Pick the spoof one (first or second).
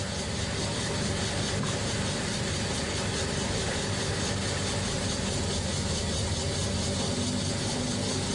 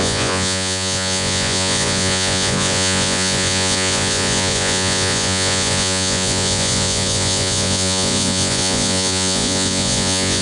second